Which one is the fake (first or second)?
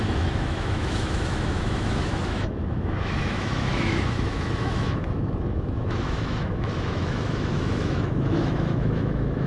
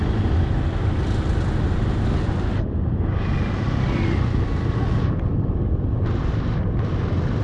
first